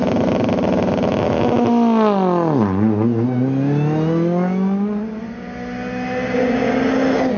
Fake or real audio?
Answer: real